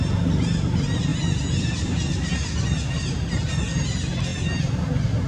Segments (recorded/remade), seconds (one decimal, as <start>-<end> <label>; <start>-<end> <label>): 0.0-5.3 recorded